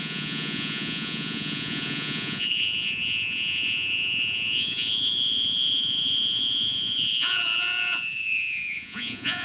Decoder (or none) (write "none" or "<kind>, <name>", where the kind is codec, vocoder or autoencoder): vocoder, Vocos